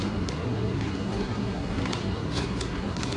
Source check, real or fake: fake